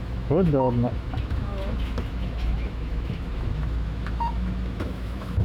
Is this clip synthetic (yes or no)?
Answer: yes